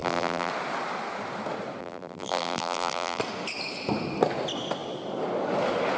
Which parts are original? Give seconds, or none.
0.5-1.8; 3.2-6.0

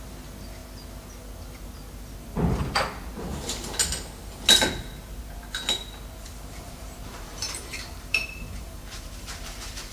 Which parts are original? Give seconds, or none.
0.0-3.3; 3.8-6.2

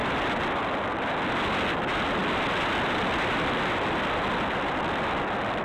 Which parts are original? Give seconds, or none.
0.8-5.6